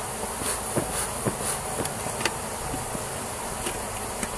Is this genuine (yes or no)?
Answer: yes